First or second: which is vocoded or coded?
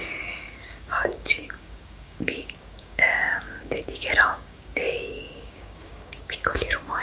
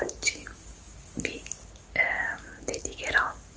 first